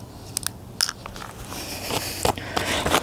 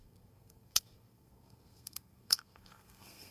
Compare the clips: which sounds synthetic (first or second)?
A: second